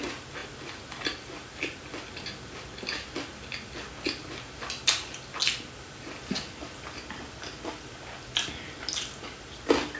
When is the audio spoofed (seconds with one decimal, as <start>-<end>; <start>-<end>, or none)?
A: none